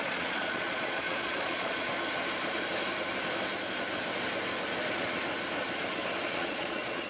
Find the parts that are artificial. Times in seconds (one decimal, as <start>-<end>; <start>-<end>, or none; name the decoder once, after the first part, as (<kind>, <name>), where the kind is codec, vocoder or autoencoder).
0.0-1.9 (vocoder, Vocos); 6.2-7.1